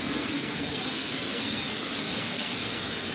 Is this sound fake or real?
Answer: fake